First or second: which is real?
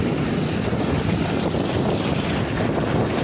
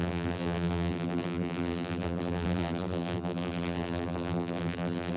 first